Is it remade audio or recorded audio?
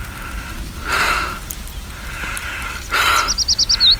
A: recorded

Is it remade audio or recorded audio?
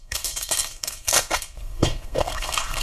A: remade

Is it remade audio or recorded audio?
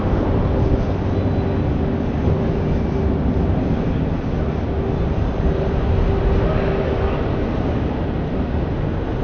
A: recorded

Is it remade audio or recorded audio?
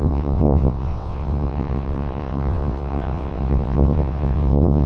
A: remade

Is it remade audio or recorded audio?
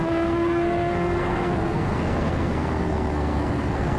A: remade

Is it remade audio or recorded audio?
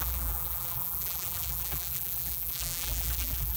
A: remade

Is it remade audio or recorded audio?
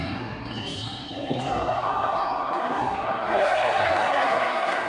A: remade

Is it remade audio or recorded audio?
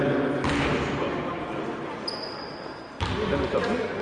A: recorded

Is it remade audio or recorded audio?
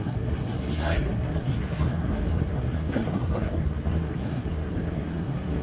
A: remade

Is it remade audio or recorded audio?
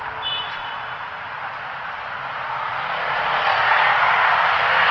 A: recorded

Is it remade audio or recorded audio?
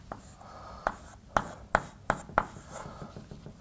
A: recorded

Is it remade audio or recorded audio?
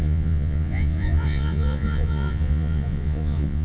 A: remade